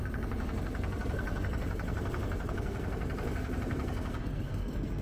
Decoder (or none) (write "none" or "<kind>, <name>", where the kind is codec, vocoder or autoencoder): codec, SNAC